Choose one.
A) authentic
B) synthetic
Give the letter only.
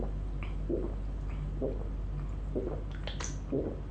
A